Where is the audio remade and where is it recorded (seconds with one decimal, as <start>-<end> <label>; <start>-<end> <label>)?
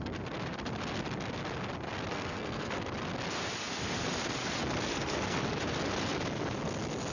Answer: 0.0-2.1 recorded; 2.1-2.8 remade; 2.8-4.9 recorded; 4.9-5.4 remade; 5.4-7.1 recorded